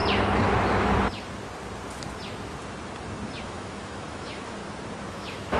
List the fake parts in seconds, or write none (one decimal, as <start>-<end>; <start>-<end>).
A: 3.4-4.6; 5.1-5.6